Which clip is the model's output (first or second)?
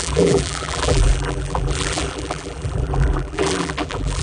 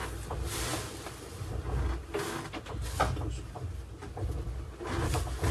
first